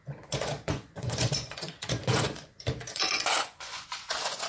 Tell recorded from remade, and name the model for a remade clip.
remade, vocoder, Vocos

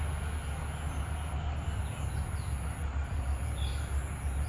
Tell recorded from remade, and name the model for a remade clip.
recorded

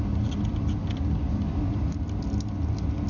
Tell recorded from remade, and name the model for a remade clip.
recorded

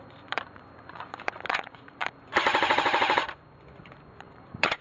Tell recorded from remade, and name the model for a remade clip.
remade, vocoder, Vocos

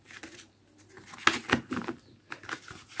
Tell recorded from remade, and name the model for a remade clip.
recorded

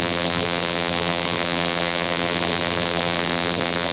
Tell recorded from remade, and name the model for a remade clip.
remade, vocoder, BigVGAN v2